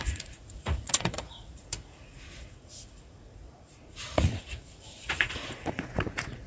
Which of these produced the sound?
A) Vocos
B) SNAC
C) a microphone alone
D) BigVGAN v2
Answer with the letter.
A